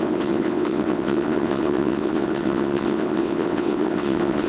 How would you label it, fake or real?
fake